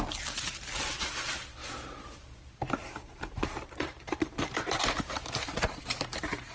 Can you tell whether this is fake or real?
fake